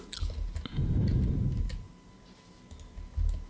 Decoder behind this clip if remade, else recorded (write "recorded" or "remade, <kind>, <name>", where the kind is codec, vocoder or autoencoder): recorded